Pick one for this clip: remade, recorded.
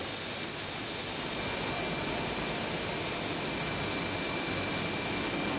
recorded